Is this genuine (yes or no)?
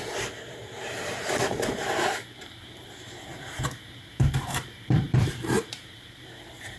no